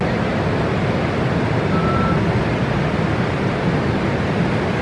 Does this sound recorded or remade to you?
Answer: recorded